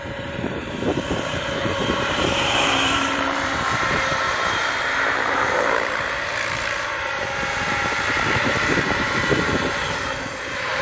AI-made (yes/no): yes